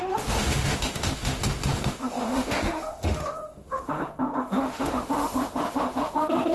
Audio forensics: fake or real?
fake